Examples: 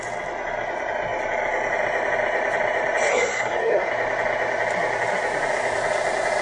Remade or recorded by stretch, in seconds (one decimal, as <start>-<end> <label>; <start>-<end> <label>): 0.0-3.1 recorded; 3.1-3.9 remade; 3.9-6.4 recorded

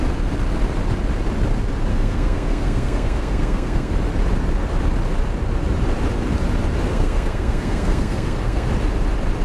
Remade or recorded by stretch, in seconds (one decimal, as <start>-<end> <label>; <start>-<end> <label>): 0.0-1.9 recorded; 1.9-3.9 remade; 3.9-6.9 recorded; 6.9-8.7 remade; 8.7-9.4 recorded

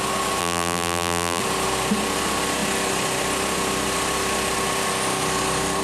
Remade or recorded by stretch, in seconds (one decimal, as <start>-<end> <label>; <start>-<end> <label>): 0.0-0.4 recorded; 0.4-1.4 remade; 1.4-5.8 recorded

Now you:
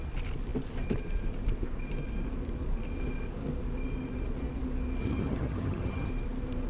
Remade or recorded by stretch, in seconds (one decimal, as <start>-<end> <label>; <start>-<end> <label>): 0.0-5.0 recorded; 5.0-6.1 remade; 6.1-6.7 recorded

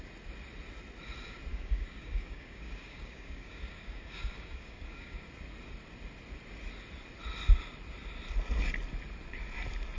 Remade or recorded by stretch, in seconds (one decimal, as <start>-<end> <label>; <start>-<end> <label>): 0.0-1.5 recorded; 1.5-5.3 remade; 5.3-10.0 recorded